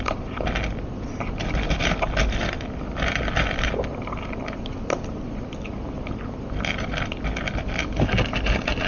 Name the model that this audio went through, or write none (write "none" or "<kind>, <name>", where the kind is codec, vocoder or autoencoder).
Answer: none